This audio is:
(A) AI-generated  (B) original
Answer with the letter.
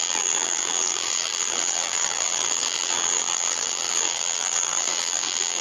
A